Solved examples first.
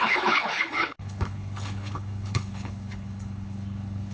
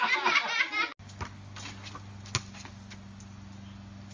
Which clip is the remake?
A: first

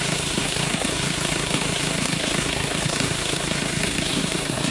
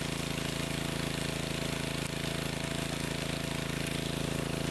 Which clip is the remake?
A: first